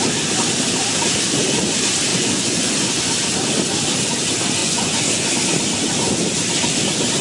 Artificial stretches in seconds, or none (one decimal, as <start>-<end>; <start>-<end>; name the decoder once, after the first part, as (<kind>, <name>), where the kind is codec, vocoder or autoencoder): 2.1-3.1 (vocoder, Vocos); 4.6-5.3